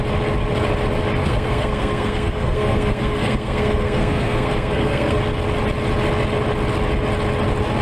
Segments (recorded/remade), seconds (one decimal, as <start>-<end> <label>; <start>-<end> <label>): 0.0-1.2 recorded; 1.2-5.2 remade; 5.2-7.8 recorded